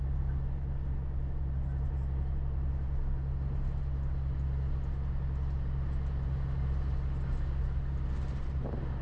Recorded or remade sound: recorded